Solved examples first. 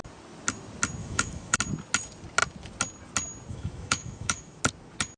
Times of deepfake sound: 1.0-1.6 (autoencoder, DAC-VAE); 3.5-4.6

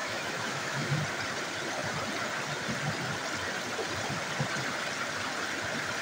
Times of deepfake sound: 0.0-1.0 (autoencoder, DAC-VAE)